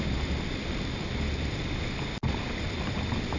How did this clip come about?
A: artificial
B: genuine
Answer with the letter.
B